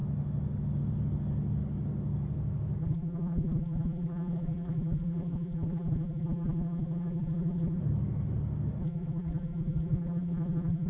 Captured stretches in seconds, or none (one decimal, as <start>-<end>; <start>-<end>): 0.0-2.8; 7.8-8.8